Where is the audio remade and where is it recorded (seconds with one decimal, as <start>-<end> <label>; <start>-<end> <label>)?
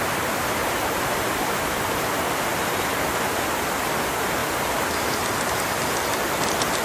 0.0-6.8 recorded